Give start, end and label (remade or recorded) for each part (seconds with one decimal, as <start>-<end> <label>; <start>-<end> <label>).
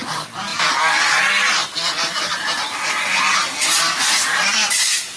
0.0-5.2 recorded